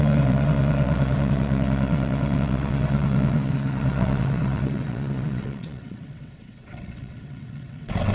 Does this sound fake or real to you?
fake